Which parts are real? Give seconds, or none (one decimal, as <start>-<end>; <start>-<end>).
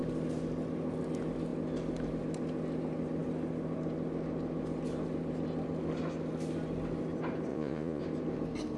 0.0-7.5; 8.0-8.8